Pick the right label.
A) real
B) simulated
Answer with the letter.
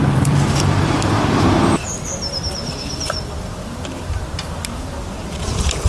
B